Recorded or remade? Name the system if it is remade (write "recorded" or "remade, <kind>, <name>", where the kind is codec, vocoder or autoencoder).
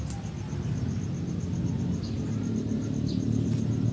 recorded